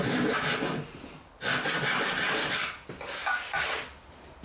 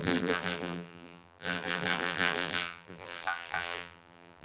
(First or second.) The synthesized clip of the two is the second